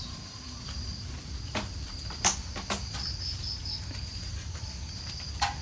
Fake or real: fake